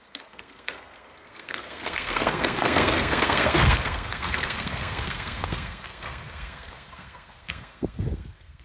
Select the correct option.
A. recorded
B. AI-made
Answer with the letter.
B